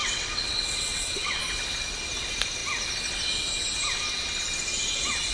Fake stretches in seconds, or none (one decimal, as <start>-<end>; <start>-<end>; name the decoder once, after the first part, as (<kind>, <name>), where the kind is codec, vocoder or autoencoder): 0.0-1.4 (vocoder, WaveNeXt)